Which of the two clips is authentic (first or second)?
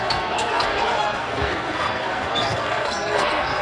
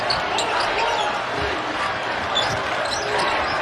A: second